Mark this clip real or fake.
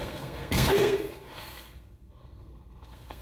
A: fake